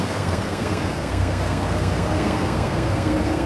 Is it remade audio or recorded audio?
remade